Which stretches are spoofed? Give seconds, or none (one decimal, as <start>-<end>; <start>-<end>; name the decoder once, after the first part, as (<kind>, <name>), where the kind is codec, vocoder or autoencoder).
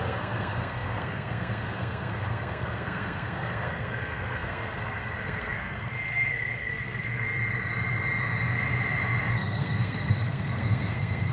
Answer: 0.0-7.3 (codec, SNAC); 9.3-11.3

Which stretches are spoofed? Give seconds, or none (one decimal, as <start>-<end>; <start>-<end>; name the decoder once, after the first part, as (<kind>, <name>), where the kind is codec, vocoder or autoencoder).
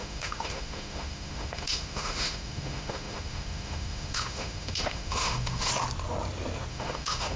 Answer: 0.0-5.7 (autoencoder, DAC-VAE); 6.7-7.4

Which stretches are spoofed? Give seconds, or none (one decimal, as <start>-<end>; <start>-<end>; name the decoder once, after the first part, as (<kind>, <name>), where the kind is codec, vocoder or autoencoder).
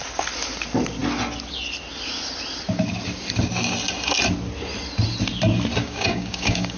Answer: 5.8-6.8 (codec, DAC)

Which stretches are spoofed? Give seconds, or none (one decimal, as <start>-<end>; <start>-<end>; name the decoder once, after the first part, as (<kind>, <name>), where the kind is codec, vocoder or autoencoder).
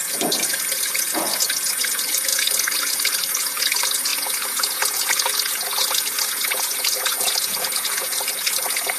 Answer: 0.0-9.0 (vocoder, Vocos)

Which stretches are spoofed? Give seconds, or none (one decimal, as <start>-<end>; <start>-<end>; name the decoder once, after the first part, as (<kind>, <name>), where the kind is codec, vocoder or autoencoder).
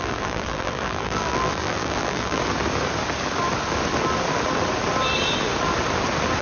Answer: 0.0-2.4 (vocoder, BigVGAN v2)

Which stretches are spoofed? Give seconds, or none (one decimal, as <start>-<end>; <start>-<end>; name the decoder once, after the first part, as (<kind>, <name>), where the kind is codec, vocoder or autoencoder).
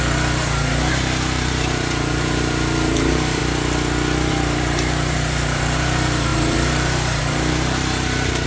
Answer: 0.0-3.4 (vocoder, BigVGAN v2); 4.3-8.5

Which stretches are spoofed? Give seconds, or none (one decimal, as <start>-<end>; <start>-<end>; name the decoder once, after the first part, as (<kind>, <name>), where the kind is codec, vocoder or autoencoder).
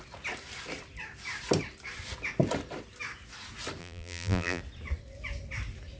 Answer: 3.8-4.6 (vocoder, BigVGAN v2)